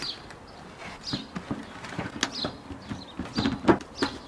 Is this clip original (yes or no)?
yes